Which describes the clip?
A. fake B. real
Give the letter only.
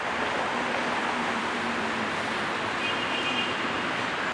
A